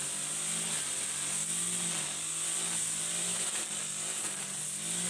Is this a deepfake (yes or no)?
no